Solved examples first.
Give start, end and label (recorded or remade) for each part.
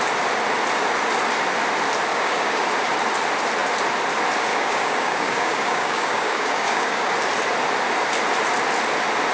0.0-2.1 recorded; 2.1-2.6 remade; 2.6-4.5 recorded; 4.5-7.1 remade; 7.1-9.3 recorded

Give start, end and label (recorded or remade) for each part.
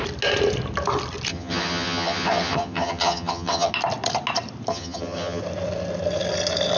0.0-1.3 recorded; 1.3-3.7 remade; 3.7-4.7 recorded; 4.7-5.4 remade; 5.4-6.8 recorded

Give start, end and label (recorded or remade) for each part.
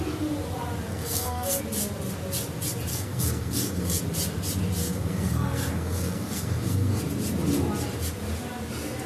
0.0-0.9 recorded; 0.9-1.6 remade; 1.6-2.9 recorded; 2.9-4.0 remade; 4.0-4.8 recorded; 4.8-7.0 remade; 7.0-9.1 recorded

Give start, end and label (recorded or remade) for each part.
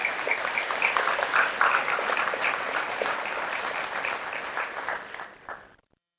0.0-6.2 recorded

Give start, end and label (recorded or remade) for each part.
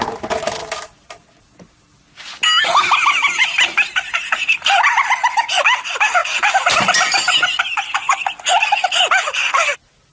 0.0-10.1 recorded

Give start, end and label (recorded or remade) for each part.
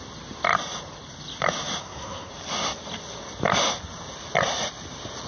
0.0-1.8 recorded; 1.8-2.3 remade; 2.3-5.3 recorded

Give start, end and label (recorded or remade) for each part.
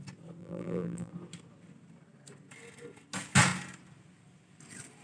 0.0-0.4 recorded; 0.4-1.1 remade; 1.1-5.0 recorded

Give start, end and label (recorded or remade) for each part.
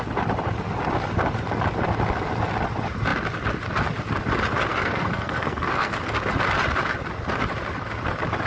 0.0-4.7 recorded; 4.7-5.9 remade; 5.9-8.5 recorded